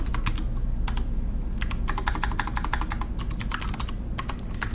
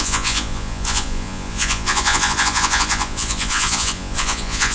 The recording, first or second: first